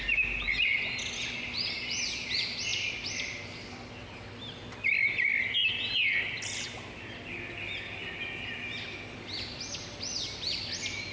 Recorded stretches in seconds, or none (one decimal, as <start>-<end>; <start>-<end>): 0.0-11.1